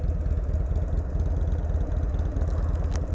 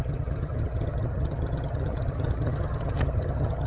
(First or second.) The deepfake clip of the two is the second